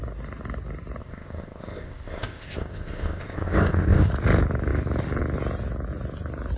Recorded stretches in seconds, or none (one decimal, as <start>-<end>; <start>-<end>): 0.0-1.0; 4.1-6.6